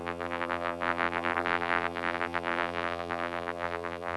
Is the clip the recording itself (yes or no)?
no